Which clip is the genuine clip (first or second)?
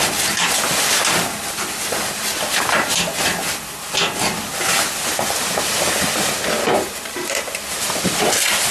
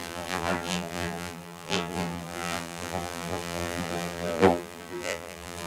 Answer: first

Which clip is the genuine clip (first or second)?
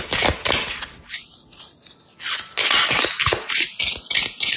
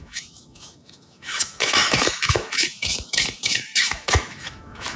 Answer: first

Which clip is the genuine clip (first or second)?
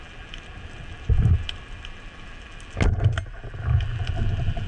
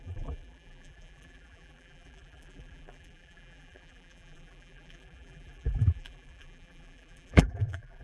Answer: first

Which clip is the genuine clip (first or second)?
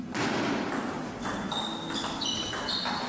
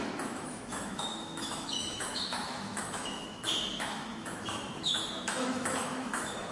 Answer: first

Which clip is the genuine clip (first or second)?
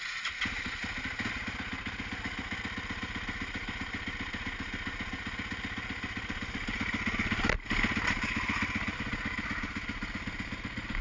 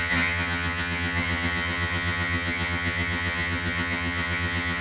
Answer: first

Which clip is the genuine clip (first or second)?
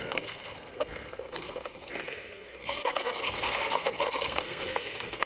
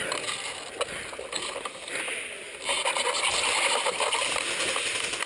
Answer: second